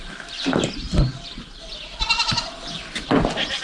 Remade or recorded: recorded